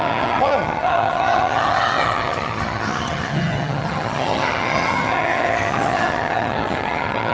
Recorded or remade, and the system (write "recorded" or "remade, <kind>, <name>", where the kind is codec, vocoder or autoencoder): remade, vocoder, HiFi-GAN